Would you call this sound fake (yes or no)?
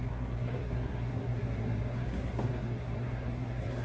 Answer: yes